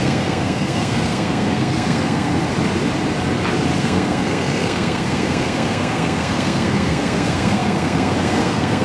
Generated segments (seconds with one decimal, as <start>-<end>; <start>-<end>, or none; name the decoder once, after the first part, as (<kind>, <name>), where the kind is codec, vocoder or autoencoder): 0.0-2.3 (codec, SNAC); 3.8-8.8